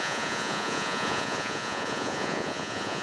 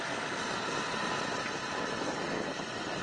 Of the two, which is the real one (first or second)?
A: second